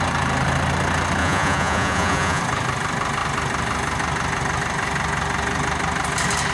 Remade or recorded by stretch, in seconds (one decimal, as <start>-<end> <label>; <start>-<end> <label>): 0.0-1.2 recorded; 1.2-2.4 remade; 2.4-6.5 recorded

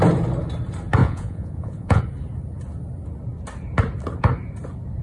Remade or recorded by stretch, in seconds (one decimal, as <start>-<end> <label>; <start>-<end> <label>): 0.0-1.0 recorded; 1.0-2.0 remade; 2.0-5.0 recorded

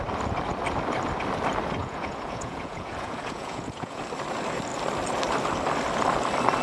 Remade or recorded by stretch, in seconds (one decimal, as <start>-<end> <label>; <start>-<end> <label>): 0.0-1.8 recorded; 1.8-4.0 remade; 4.0-6.6 recorded

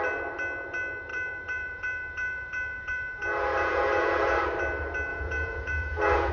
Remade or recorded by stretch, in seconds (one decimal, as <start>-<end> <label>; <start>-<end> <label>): 0.0-1.1 recorded; 1.1-4.4 remade; 4.4-5.1 recorded; 5.1-6.3 remade

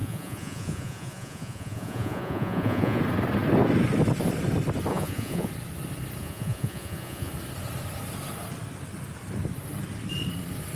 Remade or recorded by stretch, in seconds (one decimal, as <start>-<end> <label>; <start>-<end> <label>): 0.0-3.0 remade; 3.0-4.9 recorded; 4.9-5.5 remade; 5.5-6.2 recorded; 6.2-7.3 remade; 7.3-10.8 recorded

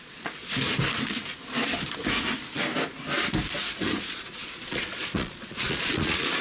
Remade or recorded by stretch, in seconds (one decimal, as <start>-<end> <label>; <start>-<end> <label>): 0.0-0.4 remade; 0.4-4.0 recorded; 4.0-6.4 remade